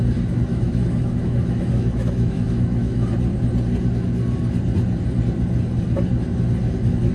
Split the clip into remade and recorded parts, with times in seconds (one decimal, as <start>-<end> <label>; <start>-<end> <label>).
0.0-0.5 recorded; 0.5-3.1 remade; 3.1-7.1 recorded